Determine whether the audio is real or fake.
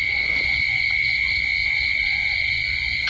fake